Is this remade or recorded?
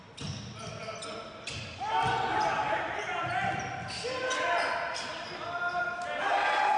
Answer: recorded